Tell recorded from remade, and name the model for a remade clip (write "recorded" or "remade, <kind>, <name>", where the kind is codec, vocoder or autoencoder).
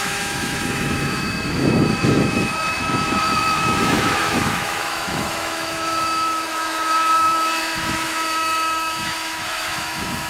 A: remade, autoencoder, DAC-VAE